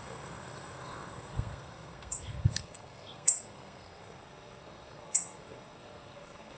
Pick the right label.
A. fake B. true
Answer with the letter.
A